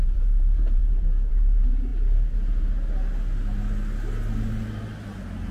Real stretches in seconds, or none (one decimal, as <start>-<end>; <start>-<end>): 1.9-5.5